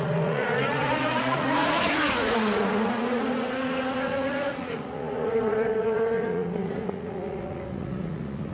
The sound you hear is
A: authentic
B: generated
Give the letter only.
B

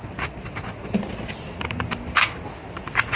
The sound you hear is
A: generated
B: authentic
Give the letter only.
B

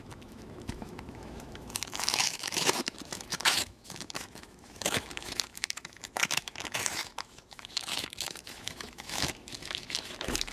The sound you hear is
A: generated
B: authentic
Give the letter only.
A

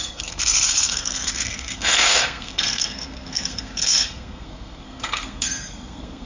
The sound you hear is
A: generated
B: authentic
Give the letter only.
A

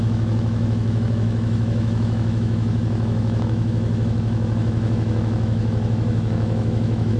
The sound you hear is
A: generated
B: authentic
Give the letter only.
A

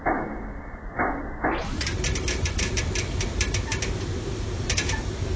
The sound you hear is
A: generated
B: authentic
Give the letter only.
B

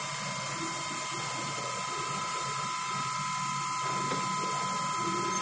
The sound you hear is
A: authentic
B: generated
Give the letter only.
A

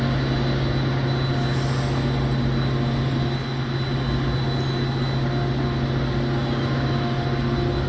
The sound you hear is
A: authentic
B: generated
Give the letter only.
A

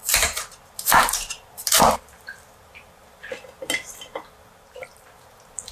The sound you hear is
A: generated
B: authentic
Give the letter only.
A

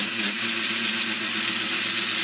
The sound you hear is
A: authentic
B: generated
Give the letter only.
A